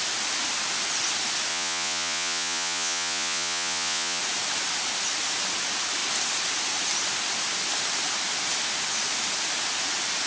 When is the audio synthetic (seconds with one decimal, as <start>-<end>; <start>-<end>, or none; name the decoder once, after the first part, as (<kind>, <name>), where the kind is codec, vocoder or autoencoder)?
1.5-4.2 (vocoder, Vocos)